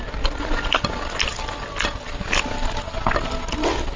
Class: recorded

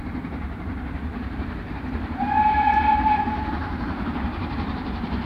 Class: remade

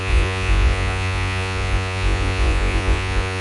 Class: remade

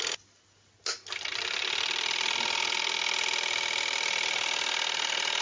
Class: recorded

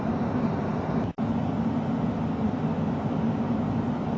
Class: recorded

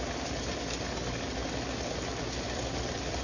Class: recorded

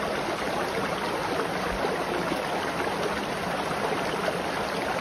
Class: recorded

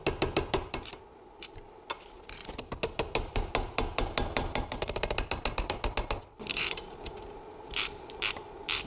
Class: recorded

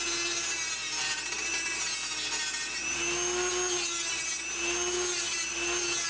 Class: recorded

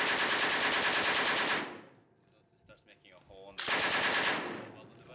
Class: recorded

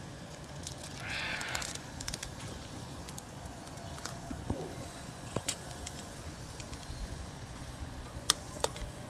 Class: remade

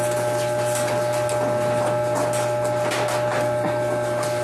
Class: recorded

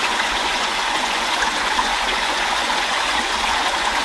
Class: remade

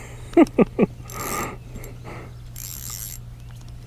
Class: recorded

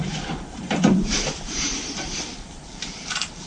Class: remade